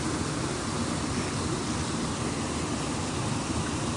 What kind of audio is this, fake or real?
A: real